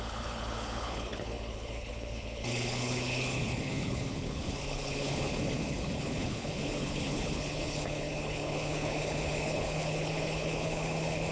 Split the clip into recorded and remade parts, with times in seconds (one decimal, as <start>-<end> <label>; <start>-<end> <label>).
0.0-11.3 remade